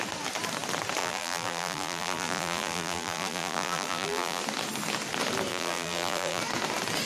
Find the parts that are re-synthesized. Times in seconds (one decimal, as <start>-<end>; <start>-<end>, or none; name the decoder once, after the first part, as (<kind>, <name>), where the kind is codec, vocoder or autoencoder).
1.0-4.4 (vocoder, BigVGAN v2); 5.5-6.4